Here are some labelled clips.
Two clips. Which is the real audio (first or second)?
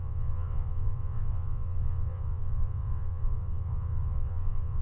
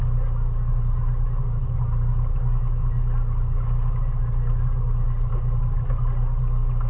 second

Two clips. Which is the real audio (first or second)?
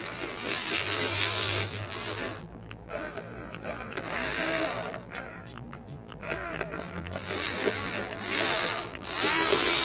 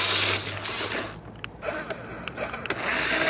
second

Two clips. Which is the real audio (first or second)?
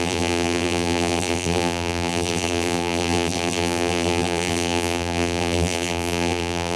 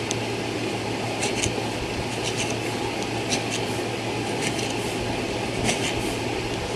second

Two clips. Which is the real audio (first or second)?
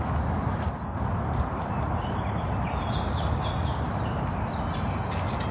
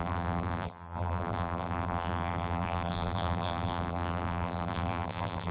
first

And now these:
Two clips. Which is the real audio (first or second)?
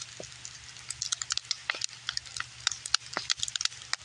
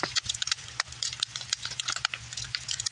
first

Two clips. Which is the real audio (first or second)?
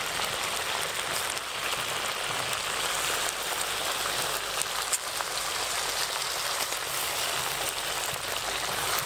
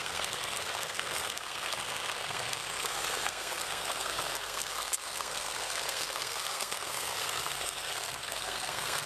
first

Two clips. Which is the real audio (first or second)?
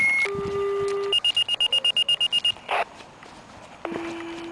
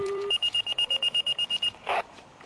first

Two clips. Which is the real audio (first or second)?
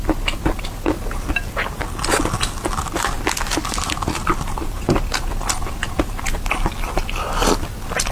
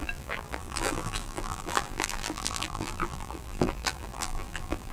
first